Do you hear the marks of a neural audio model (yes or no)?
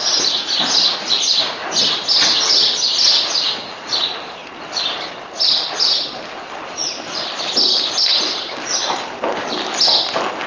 no